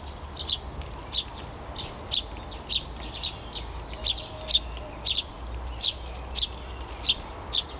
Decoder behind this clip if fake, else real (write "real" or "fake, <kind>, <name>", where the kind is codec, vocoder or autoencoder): real